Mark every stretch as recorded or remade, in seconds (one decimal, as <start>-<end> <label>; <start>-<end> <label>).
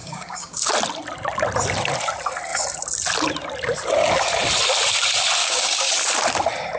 0.0-0.7 remade; 0.7-5.4 recorded; 5.4-5.9 remade; 5.9-6.8 recorded